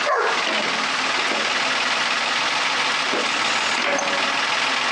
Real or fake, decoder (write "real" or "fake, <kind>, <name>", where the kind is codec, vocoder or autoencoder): real